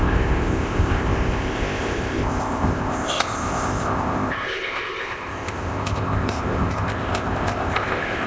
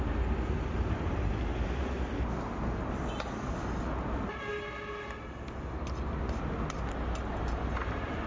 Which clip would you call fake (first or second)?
first